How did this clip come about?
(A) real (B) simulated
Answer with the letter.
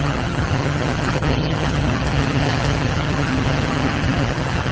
B